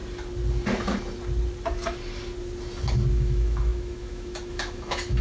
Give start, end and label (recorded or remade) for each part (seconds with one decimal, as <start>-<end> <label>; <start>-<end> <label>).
0.0-3.1 recorded; 3.1-5.2 remade